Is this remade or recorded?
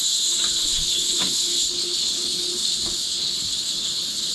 remade